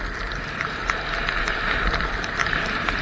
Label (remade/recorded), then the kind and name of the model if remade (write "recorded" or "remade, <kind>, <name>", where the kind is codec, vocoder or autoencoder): recorded